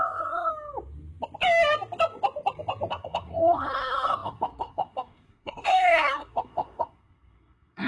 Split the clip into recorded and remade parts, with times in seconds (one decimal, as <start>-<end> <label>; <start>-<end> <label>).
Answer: 0.0-0.5 remade; 0.5-2.9 recorded; 2.9-7.9 remade